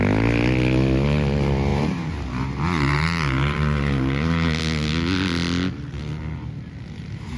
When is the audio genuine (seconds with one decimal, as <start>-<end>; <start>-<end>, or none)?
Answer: 0.0-1.7; 4.6-7.4

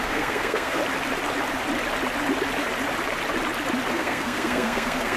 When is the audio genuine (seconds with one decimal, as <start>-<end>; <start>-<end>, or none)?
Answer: 0.8-3.9

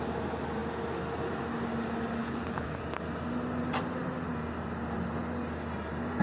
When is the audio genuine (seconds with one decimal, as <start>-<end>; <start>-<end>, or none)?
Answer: 0.0-2.2; 2.8-6.2

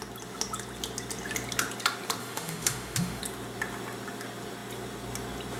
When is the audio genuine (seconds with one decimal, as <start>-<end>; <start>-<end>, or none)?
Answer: 0.0-2.2; 3.2-5.6

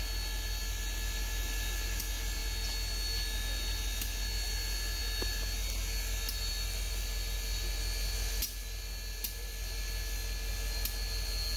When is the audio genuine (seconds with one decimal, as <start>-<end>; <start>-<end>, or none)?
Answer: 0.0-11.6

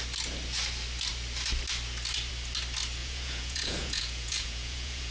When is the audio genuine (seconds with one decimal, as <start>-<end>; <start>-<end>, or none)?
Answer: 0.0-3.0